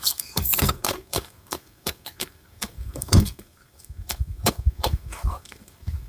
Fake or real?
fake